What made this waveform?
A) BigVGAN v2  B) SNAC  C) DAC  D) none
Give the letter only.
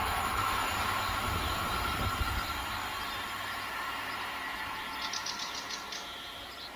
D